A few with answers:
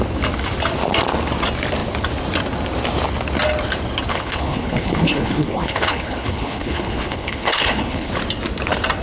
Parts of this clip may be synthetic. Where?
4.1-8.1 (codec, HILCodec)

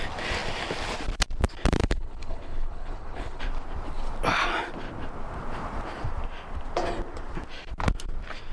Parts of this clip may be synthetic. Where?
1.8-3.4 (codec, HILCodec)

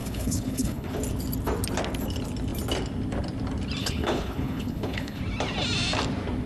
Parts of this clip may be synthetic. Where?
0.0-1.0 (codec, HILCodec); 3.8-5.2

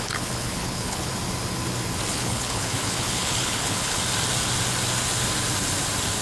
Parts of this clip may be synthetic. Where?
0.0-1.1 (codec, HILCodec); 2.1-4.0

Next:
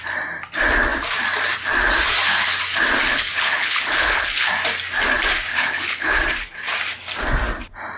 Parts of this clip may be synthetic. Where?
3.1-4.5 (codec, HILCodec); 5.5-6.1